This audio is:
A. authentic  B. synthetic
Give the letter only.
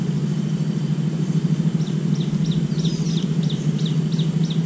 A